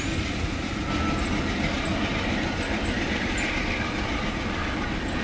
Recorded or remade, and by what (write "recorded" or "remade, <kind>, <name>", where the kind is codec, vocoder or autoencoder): recorded